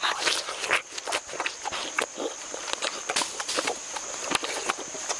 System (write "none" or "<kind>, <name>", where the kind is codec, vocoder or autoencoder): none